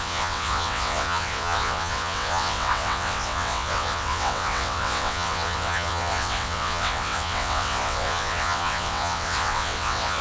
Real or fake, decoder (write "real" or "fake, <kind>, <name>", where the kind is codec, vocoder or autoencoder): fake, vocoder, WaveNeXt